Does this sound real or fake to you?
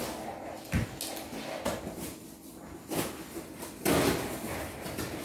real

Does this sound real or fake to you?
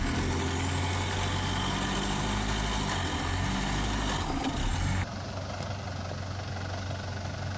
real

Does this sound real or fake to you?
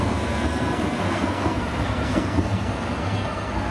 fake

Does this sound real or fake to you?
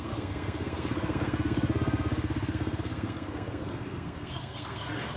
fake